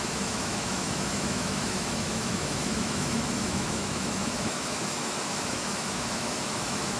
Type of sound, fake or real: fake